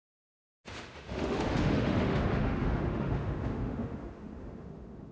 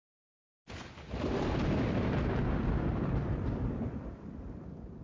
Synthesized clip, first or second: first